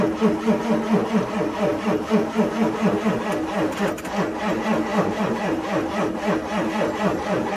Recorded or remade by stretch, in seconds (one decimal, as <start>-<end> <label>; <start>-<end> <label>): 0.0-7.6 recorded